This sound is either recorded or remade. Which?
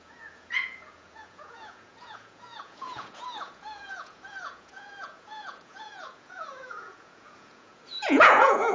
remade